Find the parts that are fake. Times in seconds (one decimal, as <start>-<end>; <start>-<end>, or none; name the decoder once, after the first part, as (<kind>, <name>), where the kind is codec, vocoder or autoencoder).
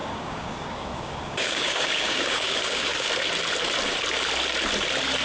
0.0-3.1 (codec, DAC)